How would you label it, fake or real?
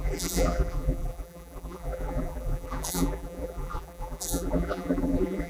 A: fake